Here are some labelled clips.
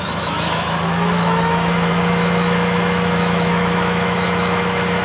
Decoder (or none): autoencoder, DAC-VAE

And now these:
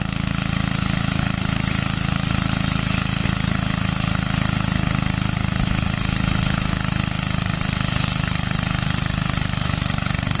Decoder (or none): none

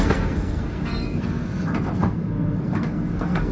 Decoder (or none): codec, SNAC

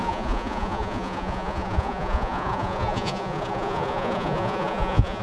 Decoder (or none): vocoder, Vocos